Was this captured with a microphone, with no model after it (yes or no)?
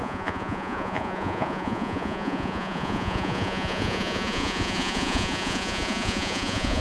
no